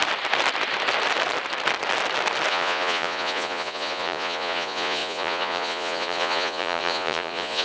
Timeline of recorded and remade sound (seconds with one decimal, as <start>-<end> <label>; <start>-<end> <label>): 0.0-2.5 recorded; 2.5-7.6 remade